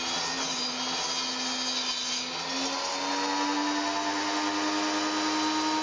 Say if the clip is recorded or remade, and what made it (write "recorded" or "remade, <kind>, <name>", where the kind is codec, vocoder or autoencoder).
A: recorded